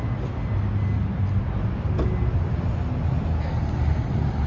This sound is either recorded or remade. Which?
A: recorded